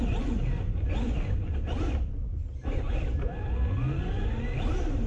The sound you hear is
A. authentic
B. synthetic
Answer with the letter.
A